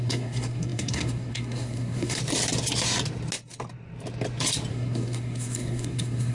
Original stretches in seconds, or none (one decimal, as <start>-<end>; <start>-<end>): 2.2-4.7